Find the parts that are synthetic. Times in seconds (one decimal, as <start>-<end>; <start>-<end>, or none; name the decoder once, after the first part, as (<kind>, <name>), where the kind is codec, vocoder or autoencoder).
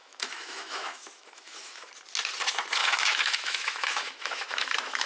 0.0-1.9 (autoencoder, DAC-VAE); 2.8-5.1